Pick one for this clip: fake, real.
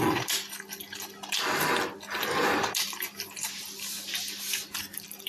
real